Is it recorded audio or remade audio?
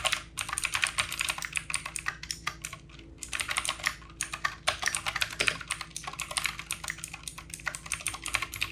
recorded